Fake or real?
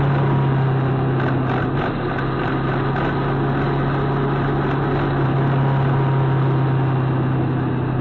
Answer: real